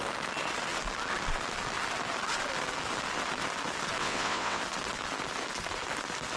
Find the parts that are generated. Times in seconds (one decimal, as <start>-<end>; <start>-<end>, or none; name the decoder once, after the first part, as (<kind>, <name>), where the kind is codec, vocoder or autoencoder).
4.0-4.6 (vocoder, WaveNeXt)